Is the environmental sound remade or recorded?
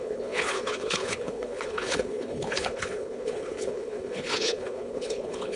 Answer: remade